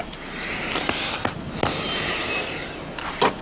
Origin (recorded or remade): recorded